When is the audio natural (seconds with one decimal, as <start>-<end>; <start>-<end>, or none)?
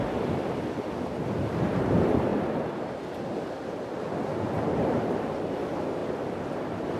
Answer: 0.0-4.3; 5.1-7.0